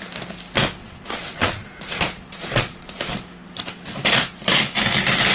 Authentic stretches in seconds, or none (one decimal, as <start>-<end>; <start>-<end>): 0.0-0.8; 3.1-5.3